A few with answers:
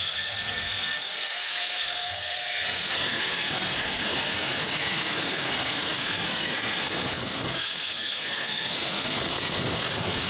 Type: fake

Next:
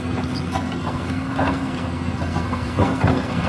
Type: fake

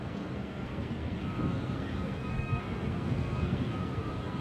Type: fake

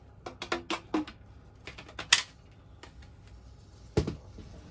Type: real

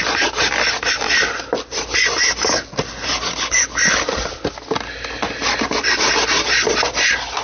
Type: real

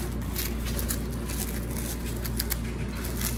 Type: real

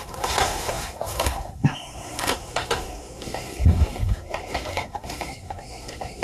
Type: fake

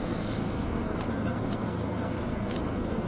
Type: fake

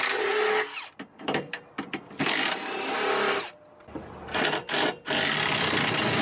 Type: real